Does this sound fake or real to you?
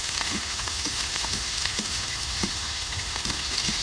fake